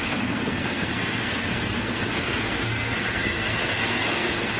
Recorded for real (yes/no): no